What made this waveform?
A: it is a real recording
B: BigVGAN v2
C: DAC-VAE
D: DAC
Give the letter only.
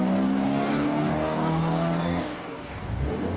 D